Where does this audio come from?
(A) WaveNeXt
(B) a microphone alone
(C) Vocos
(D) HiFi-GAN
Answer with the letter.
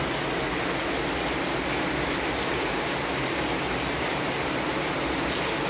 B